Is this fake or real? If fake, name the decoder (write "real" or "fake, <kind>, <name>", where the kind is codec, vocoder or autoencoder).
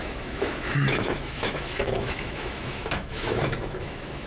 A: fake, autoencoder, DAC-VAE